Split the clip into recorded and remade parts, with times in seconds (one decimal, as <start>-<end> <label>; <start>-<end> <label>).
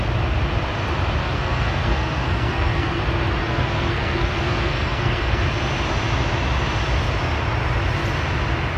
0.0-1.2 recorded; 1.2-3.0 remade; 3.0-3.4 recorded; 3.4-5.4 remade; 5.4-8.8 recorded